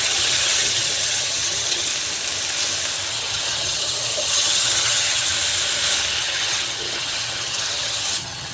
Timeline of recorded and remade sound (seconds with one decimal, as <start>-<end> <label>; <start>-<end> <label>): 0.0-1.9 remade; 1.9-3.1 recorded; 3.1-5.3 remade; 5.3-6.2 recorded; 6.2-8.5 remade